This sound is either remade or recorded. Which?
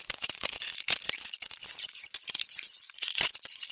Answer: remade